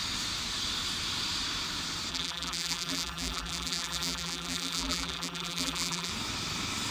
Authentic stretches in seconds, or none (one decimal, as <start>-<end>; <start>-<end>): 0.0-2.1; 6.1-6.9